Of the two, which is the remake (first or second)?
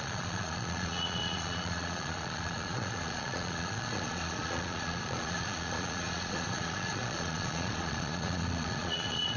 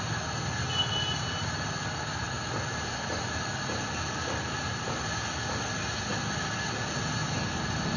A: first